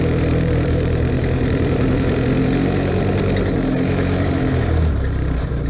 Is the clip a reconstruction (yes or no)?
yes